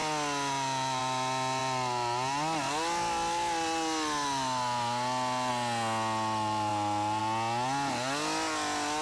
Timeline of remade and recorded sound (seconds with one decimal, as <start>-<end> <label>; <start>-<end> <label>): 0.0-9.0 recorded